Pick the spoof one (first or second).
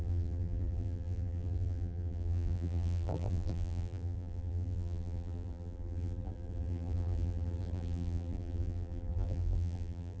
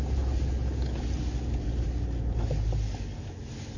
first